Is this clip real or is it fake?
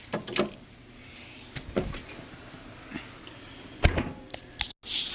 real